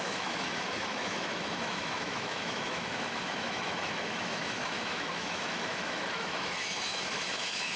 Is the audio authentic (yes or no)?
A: no